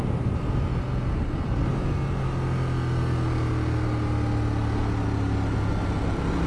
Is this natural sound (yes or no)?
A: yes